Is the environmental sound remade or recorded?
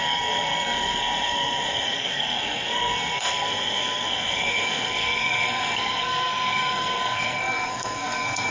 remade